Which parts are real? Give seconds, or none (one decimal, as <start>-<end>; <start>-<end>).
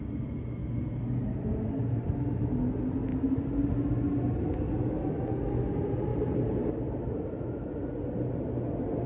0.0-0.6; 2.6-6.1; 7.5-9.1